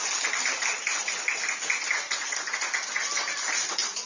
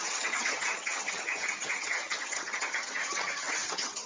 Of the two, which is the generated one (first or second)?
second